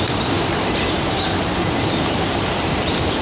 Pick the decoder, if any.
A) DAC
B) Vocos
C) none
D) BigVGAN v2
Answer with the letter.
D